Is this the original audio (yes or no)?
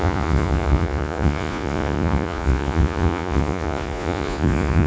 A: no